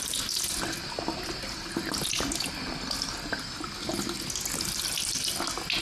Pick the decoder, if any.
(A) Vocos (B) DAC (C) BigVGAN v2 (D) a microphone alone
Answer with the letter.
D